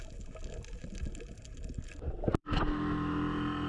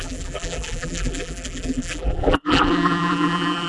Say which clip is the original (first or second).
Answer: first